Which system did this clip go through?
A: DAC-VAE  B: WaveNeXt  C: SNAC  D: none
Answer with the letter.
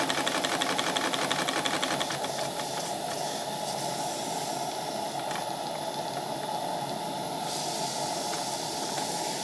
D